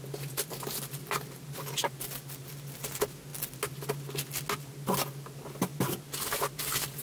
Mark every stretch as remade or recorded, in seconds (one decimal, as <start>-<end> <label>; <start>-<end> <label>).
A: 0.0-7.0 recorded